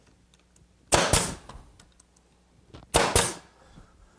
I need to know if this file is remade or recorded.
recorded